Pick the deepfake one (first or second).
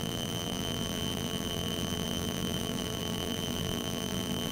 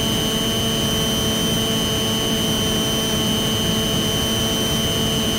first